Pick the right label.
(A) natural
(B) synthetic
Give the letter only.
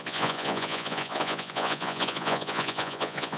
B